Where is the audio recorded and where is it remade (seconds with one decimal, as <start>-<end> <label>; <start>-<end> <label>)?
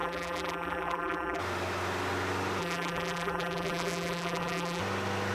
0.0-1.4 remade; 1.4-2.6 recorded; 2.6-4.8 remade; 4.8-5.3 recorded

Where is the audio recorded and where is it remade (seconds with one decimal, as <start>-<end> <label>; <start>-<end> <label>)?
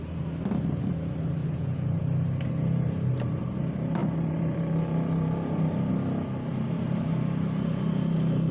0.0-1.4 recorded; 1.4-2.0 remade; 2.0-8.5 recorded